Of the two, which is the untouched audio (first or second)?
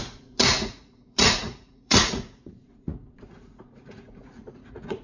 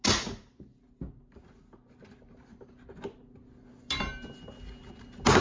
second